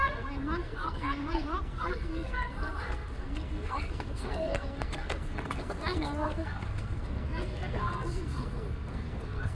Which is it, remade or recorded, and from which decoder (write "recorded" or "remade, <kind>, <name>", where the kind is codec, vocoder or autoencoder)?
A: remade, codec, SNAC